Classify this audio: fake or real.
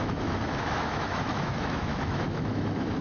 fake